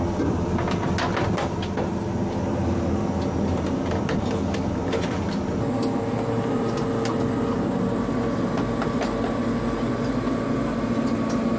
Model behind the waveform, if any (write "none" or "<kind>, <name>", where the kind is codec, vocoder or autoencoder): none